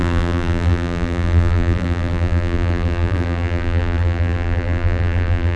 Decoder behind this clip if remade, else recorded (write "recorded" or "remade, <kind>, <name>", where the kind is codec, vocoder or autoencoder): remade, vocoder, BigVGAN v2